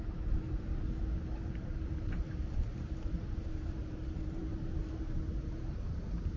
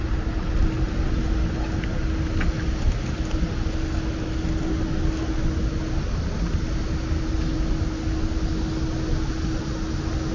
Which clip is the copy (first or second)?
first